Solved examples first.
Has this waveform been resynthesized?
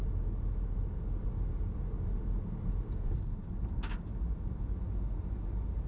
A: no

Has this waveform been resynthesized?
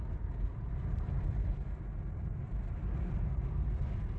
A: no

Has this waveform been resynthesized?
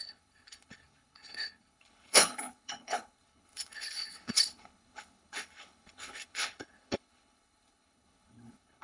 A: yes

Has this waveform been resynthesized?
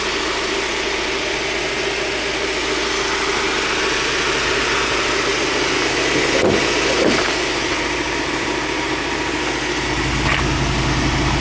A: no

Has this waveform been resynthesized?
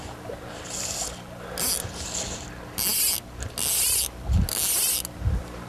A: no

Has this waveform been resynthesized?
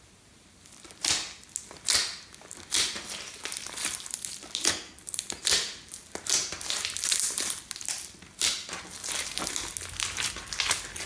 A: no